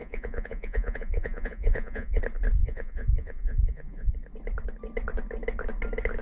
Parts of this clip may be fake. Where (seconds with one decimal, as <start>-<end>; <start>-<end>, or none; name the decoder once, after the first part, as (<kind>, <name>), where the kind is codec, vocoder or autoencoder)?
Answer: 0.0-2.2 (vocoder, Vocos); 2.6-4.1